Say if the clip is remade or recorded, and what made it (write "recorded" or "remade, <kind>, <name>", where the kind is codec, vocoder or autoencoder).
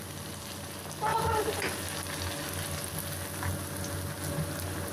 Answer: recorded